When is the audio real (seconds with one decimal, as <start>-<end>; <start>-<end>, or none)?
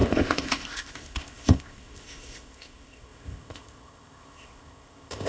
none